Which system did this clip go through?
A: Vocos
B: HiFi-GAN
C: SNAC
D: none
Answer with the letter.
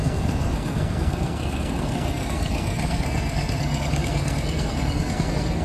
C